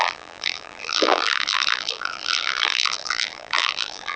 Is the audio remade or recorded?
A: remade